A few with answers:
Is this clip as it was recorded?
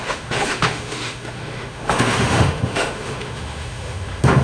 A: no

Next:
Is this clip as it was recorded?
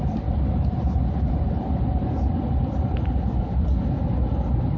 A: yes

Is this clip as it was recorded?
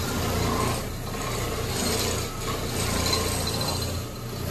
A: yes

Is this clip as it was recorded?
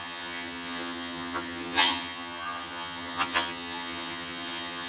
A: no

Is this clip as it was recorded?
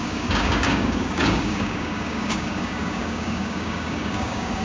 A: no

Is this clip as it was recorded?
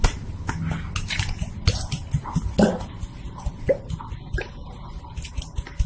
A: yes